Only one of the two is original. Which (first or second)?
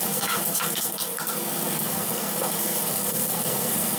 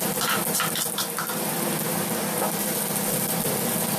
second